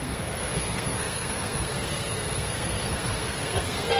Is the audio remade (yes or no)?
yes